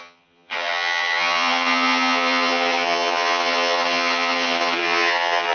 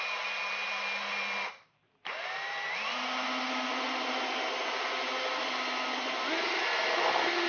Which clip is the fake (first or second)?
first